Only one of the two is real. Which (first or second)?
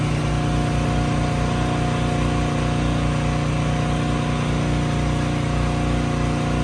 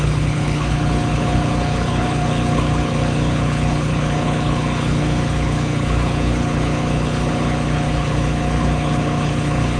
first